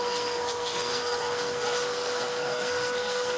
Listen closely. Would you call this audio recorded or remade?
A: remade